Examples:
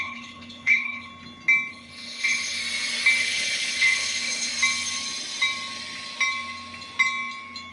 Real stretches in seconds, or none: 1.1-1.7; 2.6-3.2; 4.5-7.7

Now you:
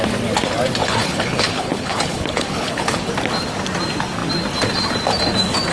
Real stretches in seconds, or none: 0.0-0.8; 3.1-5.7

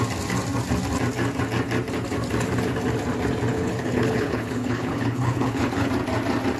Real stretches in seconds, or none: 0.0-3.5; 5.9-6.6

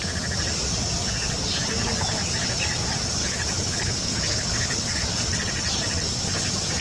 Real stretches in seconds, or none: 0.0-3.2; 5.0-6.8

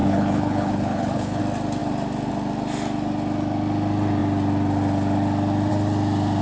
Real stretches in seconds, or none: 1.4-6.4

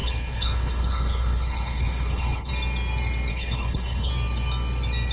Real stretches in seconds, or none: 2.5-3.3; 4.1-5.1